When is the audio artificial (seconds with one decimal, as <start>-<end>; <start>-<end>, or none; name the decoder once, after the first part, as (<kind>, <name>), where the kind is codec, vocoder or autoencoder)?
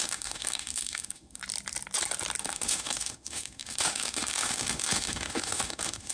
0.0-1.4 (autoencoder, DAC-VAE); 2.4-6.1